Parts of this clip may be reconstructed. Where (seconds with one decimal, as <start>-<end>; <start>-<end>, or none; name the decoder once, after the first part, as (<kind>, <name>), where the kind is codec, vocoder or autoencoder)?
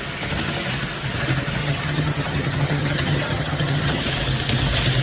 1.6-4.0 (vocoder, HiFi-GAN)